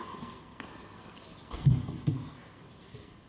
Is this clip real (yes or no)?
no